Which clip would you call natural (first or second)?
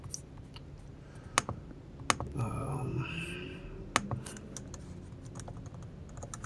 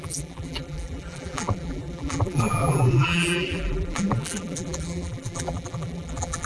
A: first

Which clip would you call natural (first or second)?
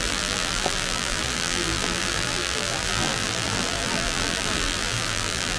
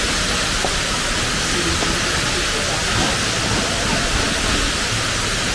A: second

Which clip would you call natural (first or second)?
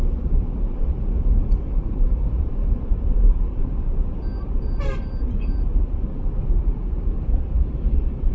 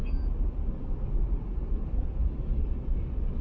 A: second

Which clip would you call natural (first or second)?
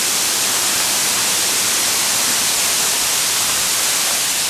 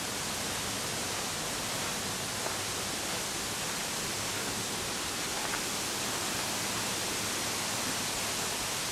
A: second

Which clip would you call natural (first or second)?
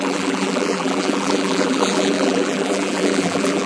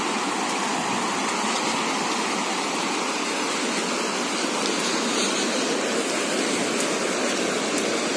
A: second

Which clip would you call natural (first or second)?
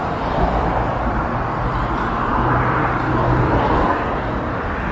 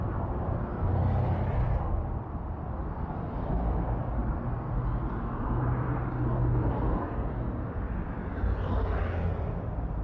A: second